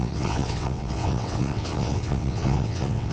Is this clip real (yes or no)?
no